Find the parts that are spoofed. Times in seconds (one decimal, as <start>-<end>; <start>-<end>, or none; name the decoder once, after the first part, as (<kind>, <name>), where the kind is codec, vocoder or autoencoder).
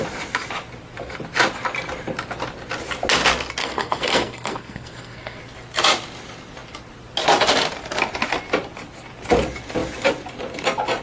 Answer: 3.6-5.4 (codec, SNAC)